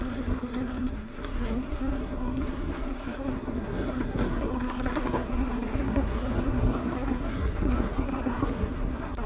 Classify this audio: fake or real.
fake